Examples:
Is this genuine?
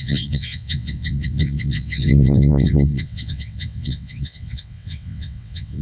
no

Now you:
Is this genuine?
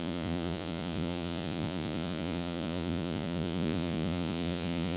no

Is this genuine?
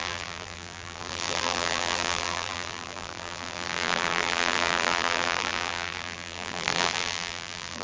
no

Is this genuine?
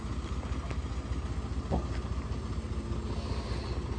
yes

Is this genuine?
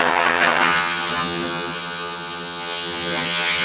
no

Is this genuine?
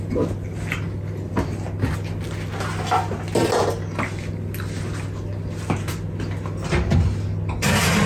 yes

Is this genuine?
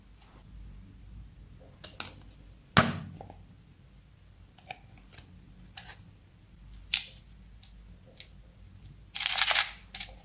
yes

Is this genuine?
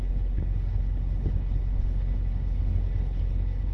no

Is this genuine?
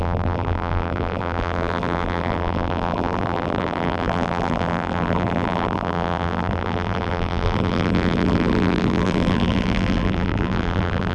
no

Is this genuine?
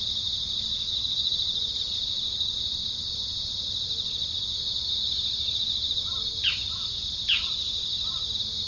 yes